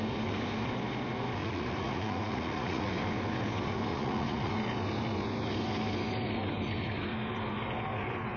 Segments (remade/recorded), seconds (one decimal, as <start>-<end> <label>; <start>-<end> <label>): 0.0-1.4 recorded; 1.4-2.9 remade; 2.9-3.9 recorded; 3.9-4.5 remade; 4.5-8.4 recorded